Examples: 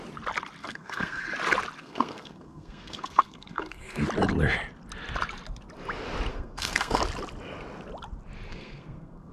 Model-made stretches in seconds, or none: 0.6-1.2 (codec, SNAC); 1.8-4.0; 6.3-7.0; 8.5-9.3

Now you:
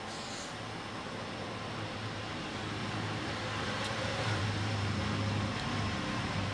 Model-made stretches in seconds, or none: 2.8-5.0 (vocoder, BigVGAN v2)

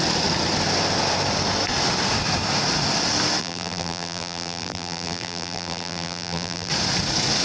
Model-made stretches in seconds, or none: 3.4-6.7 (vocoder, BigVGAN v2)